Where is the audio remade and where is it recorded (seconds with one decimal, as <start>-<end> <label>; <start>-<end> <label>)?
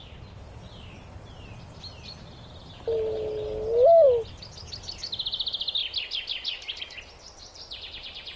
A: 0.0-8.4 recorded